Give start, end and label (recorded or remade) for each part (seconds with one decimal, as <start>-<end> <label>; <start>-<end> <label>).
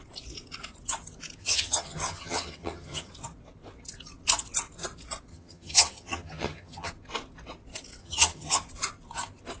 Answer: 0.0-1.4 recorded; 1.4-3.1 remade; 3.1-5.3 recorded; 5.3-6.9 remade; 6.9-8.0 recorded; 8.0-8.6 remade; 8.6-9.6 recorded